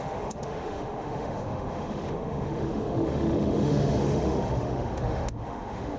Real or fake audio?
fake